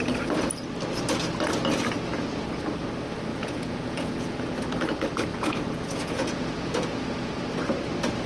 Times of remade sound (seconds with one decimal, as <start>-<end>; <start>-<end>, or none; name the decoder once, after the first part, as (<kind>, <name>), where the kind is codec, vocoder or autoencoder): 3.3-4.4 (vocoder, Vocos); 5.3-7.4